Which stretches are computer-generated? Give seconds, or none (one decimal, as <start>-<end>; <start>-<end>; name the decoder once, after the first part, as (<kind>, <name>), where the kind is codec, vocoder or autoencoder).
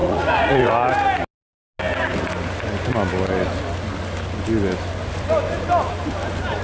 0.0-0.7 (vocoder, Vocos)